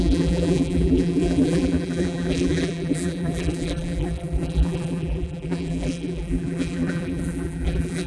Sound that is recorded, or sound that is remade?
remade